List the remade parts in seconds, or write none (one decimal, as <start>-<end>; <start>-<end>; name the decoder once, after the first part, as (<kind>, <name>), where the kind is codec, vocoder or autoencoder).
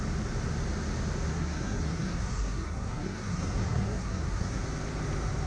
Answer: 1.3-4.6 (codec, SNAC)